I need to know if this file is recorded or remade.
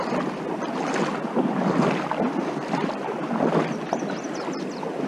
recorded